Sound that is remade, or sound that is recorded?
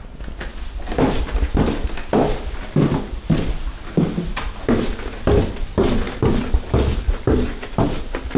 recorded